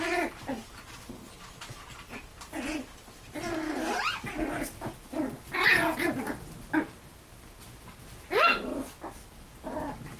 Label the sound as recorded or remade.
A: recorded